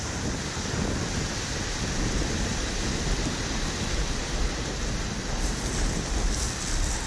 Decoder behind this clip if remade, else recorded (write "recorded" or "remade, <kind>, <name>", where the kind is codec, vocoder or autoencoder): recorded